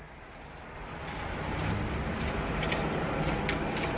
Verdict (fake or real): real